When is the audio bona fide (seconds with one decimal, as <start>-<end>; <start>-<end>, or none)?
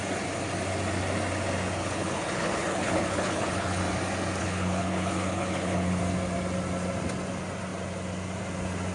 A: 0.0-1.8; 3.8-4.4; 6.0-8.9